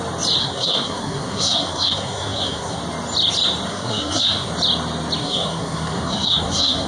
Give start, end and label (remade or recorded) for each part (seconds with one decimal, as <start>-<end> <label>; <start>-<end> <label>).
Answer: 0.0-0.4 recorded; 0.4-2.8 remade; 2.8-3.7 recorded; 3.7-4.5 remade; 4.5-5.2 recorded; 5.2-6.9 remade